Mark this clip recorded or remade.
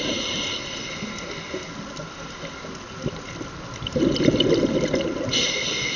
recorded